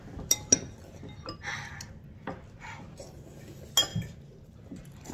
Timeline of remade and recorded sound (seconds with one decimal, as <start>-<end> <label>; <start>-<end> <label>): 0.0-3.9 recorded; 3.9-5.1 remade